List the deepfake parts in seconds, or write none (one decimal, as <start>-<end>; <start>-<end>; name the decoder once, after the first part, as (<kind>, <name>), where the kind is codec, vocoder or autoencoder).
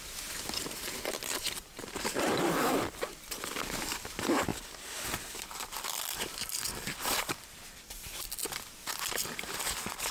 0.0-4.5 (vocoder, BigVGAN v2); 5.3-10.1